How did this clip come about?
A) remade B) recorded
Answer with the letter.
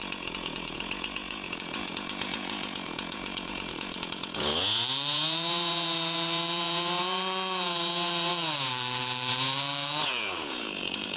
A